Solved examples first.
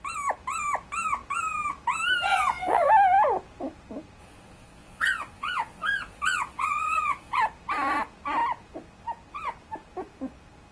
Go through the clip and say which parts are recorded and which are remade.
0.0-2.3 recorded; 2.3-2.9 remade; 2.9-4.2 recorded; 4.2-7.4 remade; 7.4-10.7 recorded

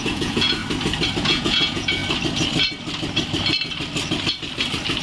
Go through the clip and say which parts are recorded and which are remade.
0.0-0.6 remade; 0.6-1.2 recorded; 1.2-2.0 remade; 2.0-5.0 recorded

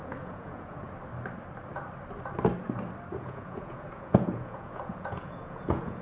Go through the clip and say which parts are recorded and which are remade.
0.0-0.9 remade; 0.9-3.1 recorded; 3.1-6.0 remade

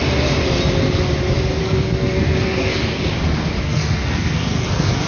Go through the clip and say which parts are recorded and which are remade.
0.0-1.6 recorded; 1.6-3.1 remade; 3.1-3.6 recorded; 3.6-5.1 remade

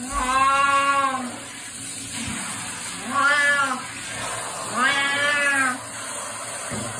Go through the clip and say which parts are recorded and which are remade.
0.0-7.0 recorded